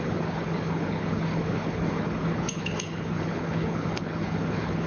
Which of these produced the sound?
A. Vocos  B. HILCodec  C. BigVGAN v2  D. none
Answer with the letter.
B